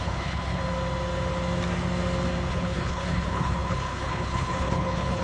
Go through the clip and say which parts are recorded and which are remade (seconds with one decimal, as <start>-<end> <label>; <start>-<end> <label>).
0.0-0.6 remade; 0.6-2.5 recorded; 2.5-5.2 remade